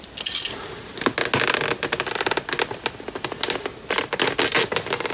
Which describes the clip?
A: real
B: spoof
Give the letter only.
A